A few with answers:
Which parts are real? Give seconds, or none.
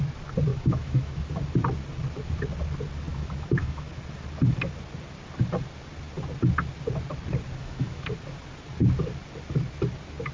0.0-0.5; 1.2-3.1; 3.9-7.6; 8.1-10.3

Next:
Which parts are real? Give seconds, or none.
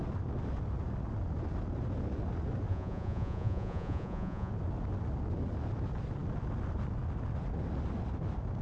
0.0-2.7; 4.5-8.6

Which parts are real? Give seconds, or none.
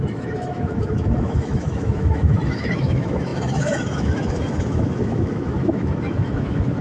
none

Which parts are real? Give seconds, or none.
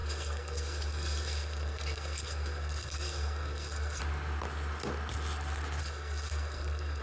4.0-5.8